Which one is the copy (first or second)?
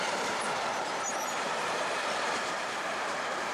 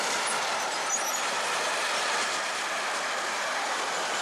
first